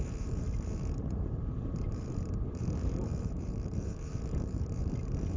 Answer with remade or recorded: remade